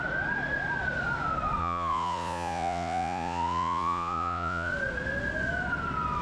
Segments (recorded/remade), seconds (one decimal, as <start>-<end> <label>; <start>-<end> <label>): 0.0-1.6 recorded; 1.6-4.7 remade; 4.7-6.2 recorded